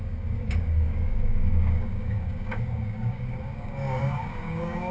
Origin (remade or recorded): remade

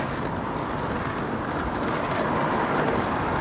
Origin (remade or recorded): recorded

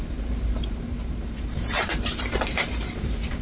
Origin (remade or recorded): remade